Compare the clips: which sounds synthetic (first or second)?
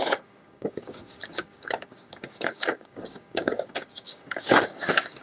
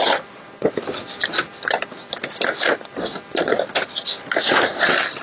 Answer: first